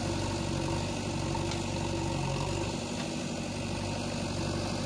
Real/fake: real